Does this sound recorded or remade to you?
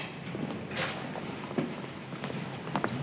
recorded